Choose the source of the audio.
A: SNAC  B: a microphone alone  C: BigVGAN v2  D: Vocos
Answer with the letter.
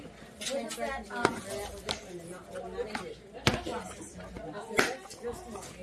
B